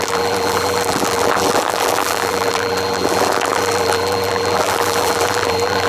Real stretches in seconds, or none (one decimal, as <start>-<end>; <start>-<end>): none